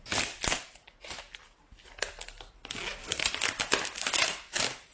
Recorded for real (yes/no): yes